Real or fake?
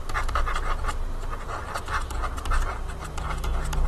real